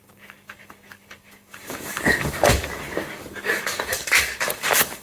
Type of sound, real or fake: fake